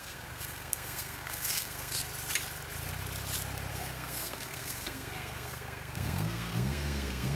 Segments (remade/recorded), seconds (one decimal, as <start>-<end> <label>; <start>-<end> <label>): 0.0-2.1 remade; 2.1-3.7 recorded; 3.7-7.3 remade